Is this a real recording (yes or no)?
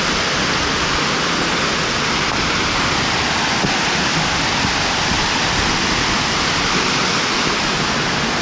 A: yes